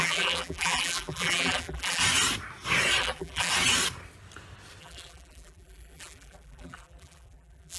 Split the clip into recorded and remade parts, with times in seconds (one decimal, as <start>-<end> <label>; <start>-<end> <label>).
0.0-2.0 remade; 2.0-3.0 recorded; 3.0-3.5 remade; 3.5-4.8 recorded; 4.8-7.8 remade